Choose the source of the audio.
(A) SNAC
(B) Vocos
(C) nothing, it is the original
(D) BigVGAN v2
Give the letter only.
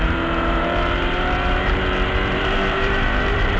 D